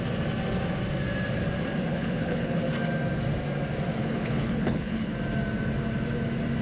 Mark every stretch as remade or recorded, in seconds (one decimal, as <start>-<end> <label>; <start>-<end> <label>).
0.0-1.9 recorded; 1.9-2.6 remade; 2.6-4.0 recorded; 4.0-5.1 remade; 5.1-6.6 recorded